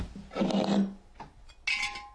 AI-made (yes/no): no